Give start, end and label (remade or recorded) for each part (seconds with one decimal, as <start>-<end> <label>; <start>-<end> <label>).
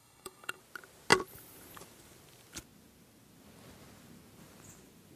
0.0-0.6 remade; 0.6-5.2 recorded